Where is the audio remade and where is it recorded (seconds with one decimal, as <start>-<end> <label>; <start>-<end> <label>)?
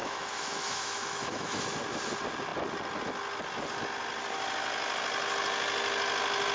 0.0-1.6 remade; 1.6-6.5 recorded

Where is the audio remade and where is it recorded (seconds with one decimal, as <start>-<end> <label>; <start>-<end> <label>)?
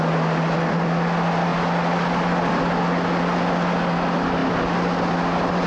0.0-5.7 recorded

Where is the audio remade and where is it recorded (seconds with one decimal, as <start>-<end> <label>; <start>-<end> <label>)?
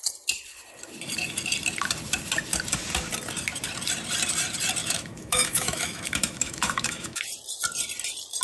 0.0-4.8 recorded; 4.8-7.2 remade; 7.2-8.4 recorded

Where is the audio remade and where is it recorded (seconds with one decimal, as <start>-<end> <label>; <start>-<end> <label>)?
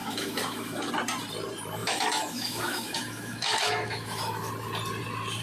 0.0-0.9 remade; 0.9-1.8 recorded; 1.8-4.5 remade; 4.5-5.4 recorded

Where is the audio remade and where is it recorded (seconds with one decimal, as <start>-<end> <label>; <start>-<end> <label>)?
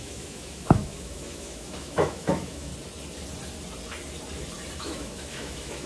0.0-2.7 remade; 2.7-4.8 recorded; 4.8-5.9 remade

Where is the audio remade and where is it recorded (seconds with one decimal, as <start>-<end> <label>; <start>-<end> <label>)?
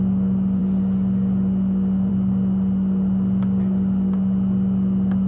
0.0-5.3 recorded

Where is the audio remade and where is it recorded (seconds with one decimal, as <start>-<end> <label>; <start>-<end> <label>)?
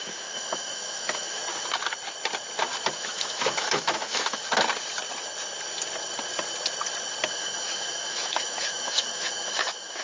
0.0-1.4 remade; 1.4-2.9 recorded; 2.9-4.4 remade; 4.4-7.3 recorded; 7.3-10.0 remade